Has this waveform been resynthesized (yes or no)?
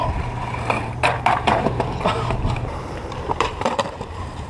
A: yes